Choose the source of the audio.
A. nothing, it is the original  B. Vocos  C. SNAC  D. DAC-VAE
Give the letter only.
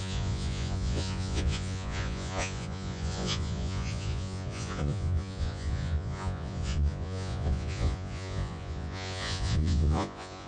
B